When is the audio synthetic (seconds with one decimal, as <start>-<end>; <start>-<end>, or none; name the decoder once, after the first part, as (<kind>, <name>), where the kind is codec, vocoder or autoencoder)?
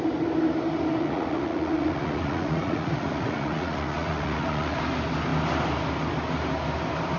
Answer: 1.0-4.8 (vocoder, Vocos)